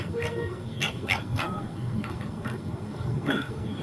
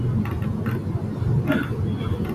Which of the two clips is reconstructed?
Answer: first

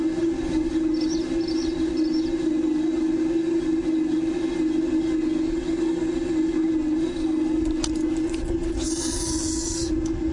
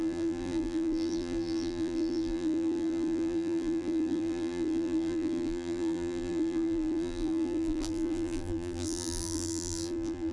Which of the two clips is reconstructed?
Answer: second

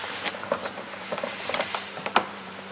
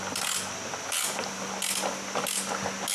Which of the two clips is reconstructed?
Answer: first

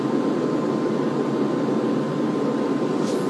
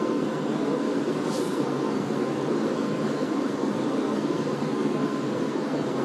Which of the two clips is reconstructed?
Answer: second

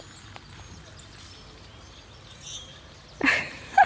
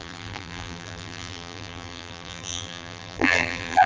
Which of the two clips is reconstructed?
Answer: second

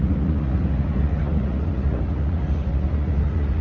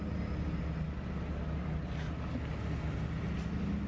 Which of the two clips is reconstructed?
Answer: first